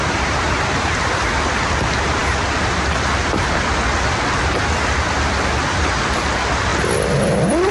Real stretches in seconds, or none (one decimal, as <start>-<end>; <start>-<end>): 0.0-7.7